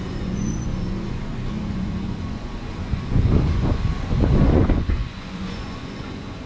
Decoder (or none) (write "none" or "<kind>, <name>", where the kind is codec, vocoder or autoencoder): vocoder, Vocos